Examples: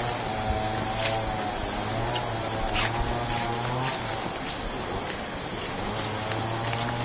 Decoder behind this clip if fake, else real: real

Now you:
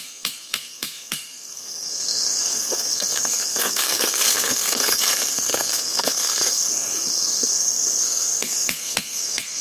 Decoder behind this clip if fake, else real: fake, codec, SNAC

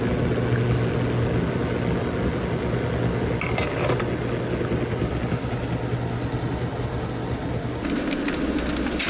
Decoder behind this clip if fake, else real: real